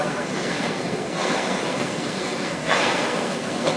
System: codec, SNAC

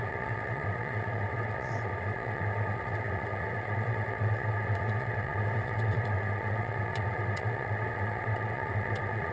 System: vocoder, WaveNeXt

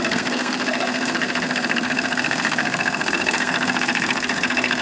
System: codec, SNAC